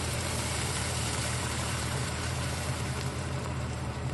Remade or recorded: remade